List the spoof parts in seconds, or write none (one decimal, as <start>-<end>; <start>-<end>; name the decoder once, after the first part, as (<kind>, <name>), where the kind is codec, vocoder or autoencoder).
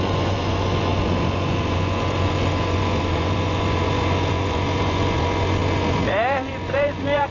0.0-7.3 (vocoder, Vocos)